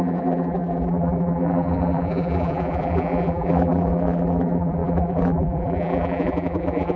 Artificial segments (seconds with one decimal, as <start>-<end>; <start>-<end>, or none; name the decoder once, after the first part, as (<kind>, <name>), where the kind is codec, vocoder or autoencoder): 0.0-7.0 (vocoder, BigVGAN v2)